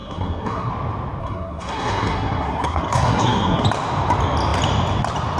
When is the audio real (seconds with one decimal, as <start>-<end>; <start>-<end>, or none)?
0.7-1.2; 3.6-5.4

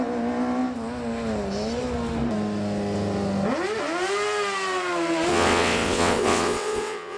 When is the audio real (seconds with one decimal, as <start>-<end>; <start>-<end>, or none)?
0.0-5.3